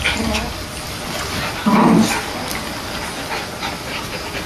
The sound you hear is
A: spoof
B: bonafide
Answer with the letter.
B